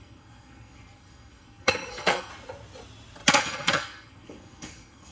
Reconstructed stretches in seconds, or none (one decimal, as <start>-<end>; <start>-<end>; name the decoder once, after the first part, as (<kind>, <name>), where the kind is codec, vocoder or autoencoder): 0.0-2.3 (codec, SNAC); 3.3-5.1